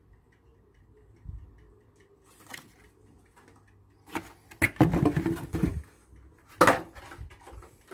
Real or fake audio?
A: real